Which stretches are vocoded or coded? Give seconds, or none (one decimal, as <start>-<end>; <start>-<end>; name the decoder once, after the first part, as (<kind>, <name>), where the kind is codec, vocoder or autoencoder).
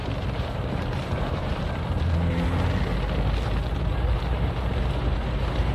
0.0-2.1 (vocoder, BigVGAN v2); 3.7-5.7